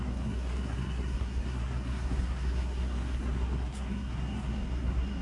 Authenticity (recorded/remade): remade